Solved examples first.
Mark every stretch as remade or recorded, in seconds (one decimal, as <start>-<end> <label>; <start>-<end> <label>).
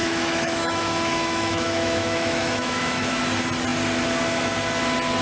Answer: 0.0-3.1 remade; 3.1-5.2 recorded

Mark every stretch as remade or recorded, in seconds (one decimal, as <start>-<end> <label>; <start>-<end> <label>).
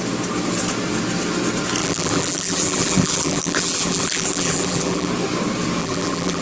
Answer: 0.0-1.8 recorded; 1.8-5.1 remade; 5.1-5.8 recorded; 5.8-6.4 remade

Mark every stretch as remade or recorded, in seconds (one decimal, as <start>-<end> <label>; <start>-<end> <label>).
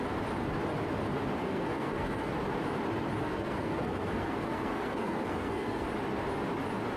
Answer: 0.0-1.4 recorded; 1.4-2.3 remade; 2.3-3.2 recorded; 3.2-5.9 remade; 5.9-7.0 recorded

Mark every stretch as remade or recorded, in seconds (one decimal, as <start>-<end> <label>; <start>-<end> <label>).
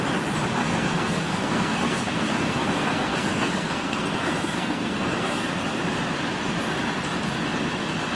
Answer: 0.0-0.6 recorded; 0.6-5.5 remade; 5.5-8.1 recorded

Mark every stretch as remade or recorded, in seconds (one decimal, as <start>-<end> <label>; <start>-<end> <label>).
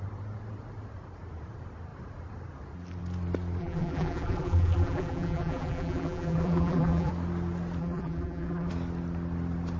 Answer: 0.0-3.6 recorded; 3.6-7.1 remade; 7.1-7.8 recorded; 7.8-8.7 remade; 8.7-9.8 recorded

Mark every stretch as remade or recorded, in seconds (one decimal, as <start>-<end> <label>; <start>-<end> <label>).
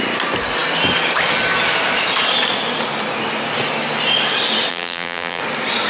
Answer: 0.0-4.7 recorded; 4.7-5.4 remade; 5.4-5.9 recorded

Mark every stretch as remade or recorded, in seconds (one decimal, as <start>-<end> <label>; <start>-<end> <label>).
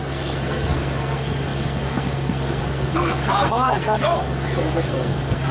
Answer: 0.0-5.5 remade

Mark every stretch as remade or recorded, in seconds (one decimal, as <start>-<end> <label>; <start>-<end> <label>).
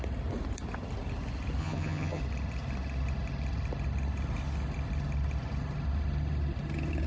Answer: 0.0-1.6 recorded; 1.6-2.2 remade; 2.2-7.1 recorded